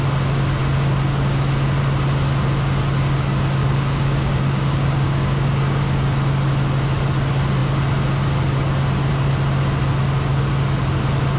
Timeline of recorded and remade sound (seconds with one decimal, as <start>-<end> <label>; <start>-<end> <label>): 0.0-3.6 recorded; 3.6-5.8 remade; 5.8-11.4 recorded